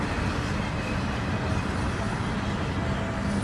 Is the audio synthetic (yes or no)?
no